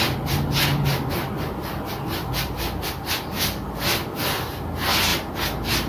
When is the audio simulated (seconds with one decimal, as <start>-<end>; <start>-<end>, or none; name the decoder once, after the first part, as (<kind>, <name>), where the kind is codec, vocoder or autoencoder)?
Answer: 0.7-4.2 (vocoder, BigVGAN v2)